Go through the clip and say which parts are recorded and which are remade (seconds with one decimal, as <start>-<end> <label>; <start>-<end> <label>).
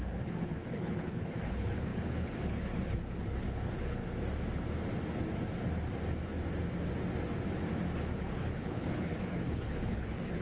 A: 0.0-4.0 remade; 4.0-8.2 recorded; 8.2-10.4 remade